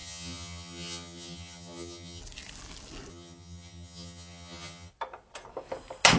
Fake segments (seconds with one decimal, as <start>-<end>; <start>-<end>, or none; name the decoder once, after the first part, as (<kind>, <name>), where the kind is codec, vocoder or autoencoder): 0.0-2.2 (vocoder, HiFi-GAN); 3.1-4.9